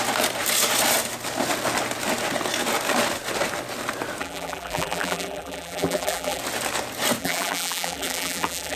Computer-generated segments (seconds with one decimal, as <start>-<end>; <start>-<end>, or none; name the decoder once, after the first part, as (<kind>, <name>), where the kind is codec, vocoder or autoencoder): 4.2-6.4 (vocoder, BigVGAN v2); 7.2-8.8